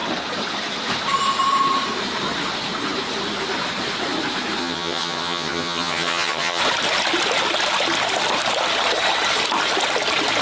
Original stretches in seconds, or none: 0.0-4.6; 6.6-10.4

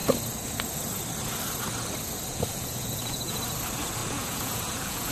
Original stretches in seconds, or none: 0.0-2.3; 3.4-4.0

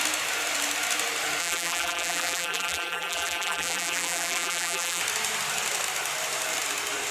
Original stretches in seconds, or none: 0.0-1.4; 5.0-7.1

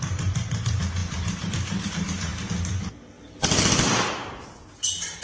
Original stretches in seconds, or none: 2.3-4.0

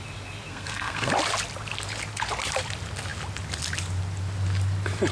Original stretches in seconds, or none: 0.0-0.5; 1.1-5.1